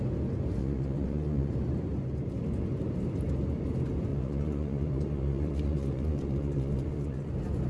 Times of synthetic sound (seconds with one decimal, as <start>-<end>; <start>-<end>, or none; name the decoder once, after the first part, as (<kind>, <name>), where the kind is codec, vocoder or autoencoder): 0.6-1.5 (vocoder, Vocos); 4.1-7.3

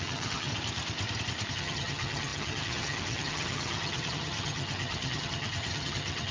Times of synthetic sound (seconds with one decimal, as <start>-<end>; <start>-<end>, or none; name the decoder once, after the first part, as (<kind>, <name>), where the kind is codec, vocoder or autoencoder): 0.0-0.5 (vocoder, HiFi-GAN); 1.5-6.3

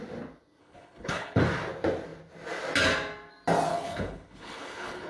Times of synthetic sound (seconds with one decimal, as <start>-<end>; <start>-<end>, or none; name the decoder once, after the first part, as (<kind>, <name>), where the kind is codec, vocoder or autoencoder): 0.6-1.4 (codec, HILCodec); 3.7-5.1

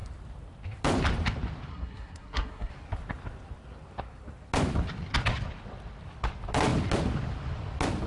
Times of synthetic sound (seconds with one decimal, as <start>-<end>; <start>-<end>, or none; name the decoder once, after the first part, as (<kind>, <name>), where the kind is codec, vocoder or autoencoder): 1.7-2.7 (codec, SNAC)

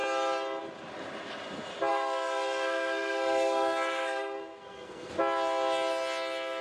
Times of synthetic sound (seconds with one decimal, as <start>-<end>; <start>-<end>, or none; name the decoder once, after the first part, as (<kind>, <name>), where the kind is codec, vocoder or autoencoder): 1.9-5.1 (codec, SNAC)